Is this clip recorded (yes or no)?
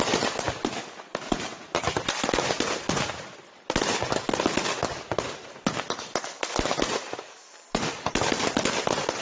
yes